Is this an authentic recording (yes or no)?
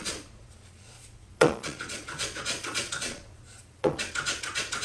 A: no